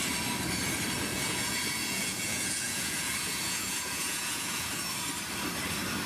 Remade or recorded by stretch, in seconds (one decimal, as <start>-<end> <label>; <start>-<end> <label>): 0.0-1.1 recorded; 1.1-4.8 remade; 4.8-6.1 recorded